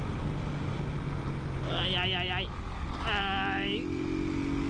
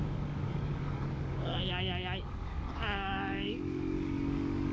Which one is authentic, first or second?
first